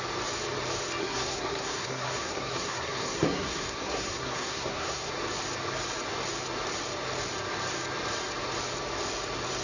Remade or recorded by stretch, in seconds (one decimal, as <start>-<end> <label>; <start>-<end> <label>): 0.0-1.0 recorded; 1.0-5.1 remade; 5.1-9.6 recorded